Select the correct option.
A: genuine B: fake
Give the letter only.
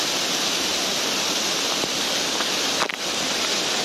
A